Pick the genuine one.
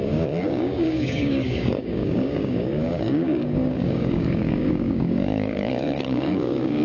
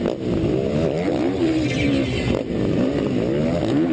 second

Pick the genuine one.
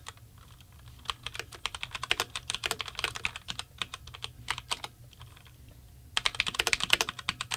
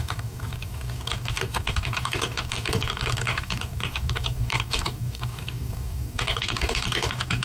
first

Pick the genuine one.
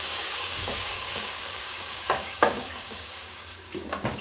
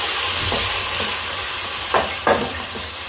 second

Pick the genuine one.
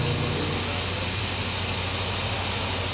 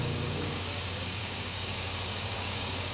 first